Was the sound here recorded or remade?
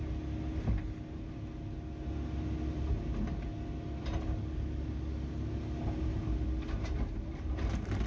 recorded